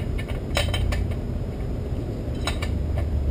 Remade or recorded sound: remade